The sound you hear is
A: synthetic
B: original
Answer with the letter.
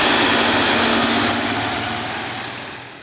B